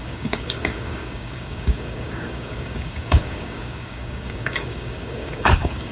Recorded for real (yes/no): no